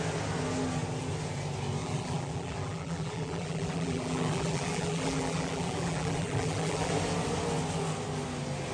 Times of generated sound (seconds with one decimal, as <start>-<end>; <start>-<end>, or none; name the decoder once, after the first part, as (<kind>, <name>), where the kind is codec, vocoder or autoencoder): 1.8-6.9 (vocoder, BigVGAN v2)